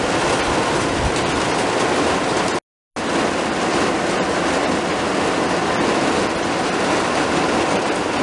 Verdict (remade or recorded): recorded